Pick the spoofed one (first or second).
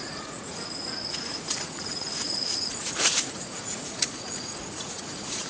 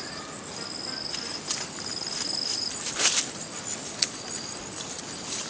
first